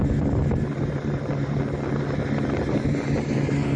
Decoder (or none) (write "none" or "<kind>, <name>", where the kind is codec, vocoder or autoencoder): none